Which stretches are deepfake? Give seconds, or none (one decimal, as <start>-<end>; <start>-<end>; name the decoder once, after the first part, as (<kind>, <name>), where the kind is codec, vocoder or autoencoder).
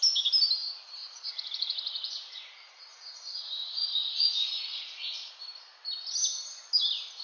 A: 1.0-5.3 (vocoder, Vocos)